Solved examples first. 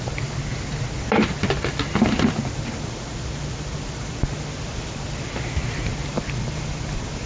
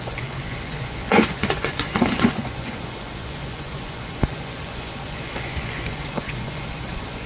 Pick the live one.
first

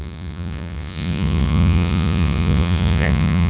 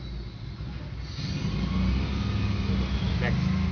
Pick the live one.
second